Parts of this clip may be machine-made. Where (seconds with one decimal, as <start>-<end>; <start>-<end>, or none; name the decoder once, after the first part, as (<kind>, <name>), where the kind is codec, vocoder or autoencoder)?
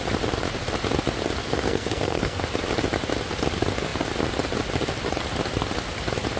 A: 1.4-2.4 (codec, SNAC)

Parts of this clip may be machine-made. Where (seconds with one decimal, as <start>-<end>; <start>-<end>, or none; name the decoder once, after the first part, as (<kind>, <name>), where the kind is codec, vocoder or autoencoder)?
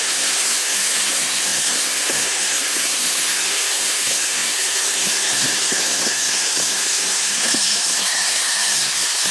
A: 0.0-9.3 (codec, SNAC)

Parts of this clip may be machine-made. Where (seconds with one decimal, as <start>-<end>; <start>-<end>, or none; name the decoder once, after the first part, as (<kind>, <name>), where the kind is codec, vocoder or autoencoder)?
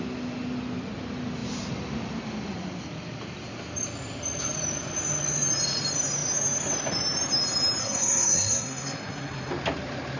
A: 7.8-9.5 (codec, SNAC)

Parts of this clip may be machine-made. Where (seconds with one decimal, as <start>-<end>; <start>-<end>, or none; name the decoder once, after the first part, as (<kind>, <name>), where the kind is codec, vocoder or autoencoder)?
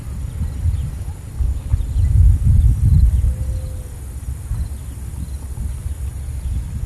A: none